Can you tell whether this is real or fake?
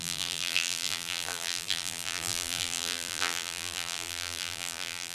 fake